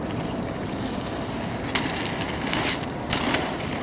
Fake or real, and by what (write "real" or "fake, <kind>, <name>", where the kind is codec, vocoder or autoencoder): real